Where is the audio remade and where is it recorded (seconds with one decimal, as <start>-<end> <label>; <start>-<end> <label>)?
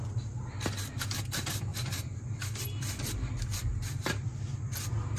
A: 0.0-1.7 recorded; 1.7-4.8 remade; 4.8-5.2 recorded